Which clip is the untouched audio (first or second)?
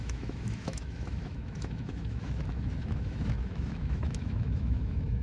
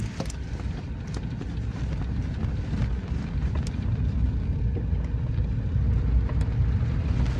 second